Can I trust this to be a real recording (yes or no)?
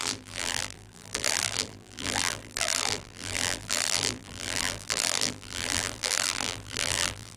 no